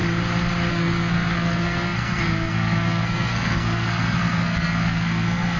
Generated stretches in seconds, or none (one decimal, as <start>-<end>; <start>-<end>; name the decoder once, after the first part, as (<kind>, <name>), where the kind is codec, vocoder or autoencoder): 0.7-5.6 (codec, SNAC)